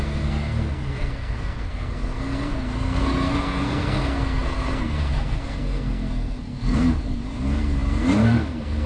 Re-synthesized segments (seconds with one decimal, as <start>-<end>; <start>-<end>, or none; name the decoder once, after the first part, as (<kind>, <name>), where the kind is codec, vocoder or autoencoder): 0.0-8.9 (codec, SNAC)